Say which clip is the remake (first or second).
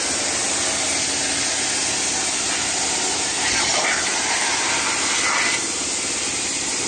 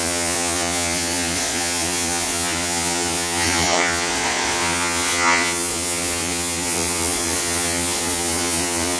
second